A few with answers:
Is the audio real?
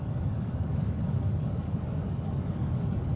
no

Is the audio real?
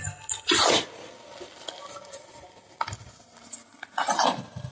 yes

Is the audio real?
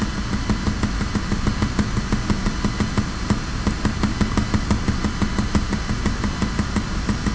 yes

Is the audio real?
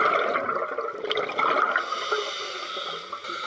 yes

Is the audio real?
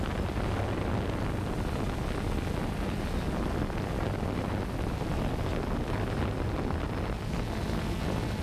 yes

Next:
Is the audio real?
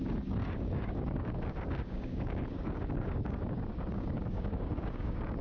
no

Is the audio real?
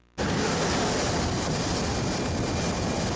yes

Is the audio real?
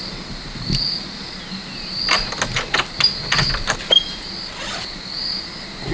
yes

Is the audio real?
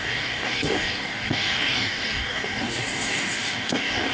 no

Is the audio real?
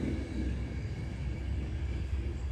no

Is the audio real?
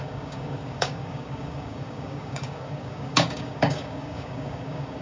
no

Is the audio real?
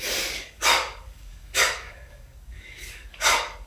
no